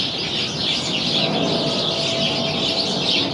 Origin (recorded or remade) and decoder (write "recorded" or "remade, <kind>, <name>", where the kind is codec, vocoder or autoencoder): recorded